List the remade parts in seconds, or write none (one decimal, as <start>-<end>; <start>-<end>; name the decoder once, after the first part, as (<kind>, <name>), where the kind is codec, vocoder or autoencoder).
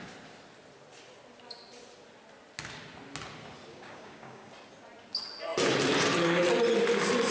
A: 3.7-4.5 (codec, DAC)